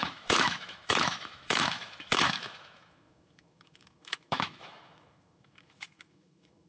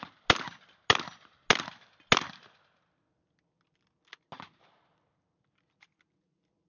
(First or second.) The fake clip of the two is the first